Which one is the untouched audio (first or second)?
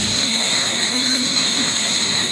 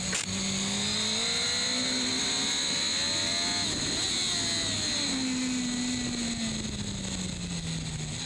second